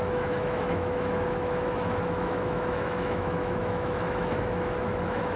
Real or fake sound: fake